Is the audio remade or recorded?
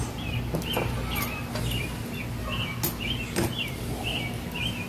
recorded